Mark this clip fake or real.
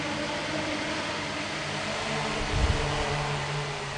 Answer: real